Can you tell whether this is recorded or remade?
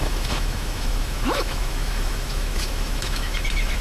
remade